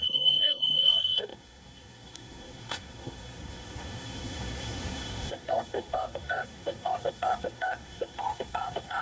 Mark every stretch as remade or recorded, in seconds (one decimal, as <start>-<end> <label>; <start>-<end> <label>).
0.0-9.0 remade